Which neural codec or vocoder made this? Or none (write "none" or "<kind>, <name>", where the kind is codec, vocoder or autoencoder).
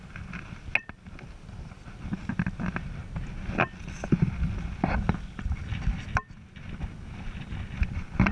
none